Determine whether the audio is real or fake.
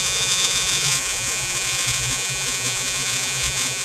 fake